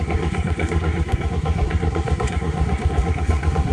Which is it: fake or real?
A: fake